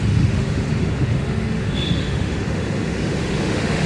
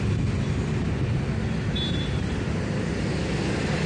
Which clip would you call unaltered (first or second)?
second